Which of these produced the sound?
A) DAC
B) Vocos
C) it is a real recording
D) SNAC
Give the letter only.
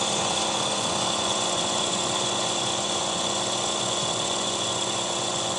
B